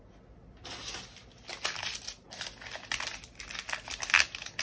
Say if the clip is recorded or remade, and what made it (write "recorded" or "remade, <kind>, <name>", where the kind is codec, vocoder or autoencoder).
recorded